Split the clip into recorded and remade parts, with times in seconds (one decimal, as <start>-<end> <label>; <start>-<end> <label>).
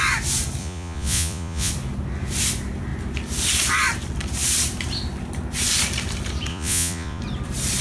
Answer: 0.0-0.6 recorded; 0.6-1.7 remade; 1.7-6.5 recorded; 6.5-7.2 remade; 7.2-7.8 recorded